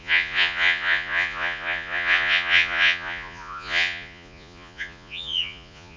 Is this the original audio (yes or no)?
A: no